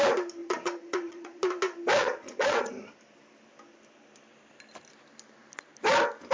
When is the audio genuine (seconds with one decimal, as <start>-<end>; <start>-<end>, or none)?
0.0-0.4; 1.4-2.0; 2.7-6.3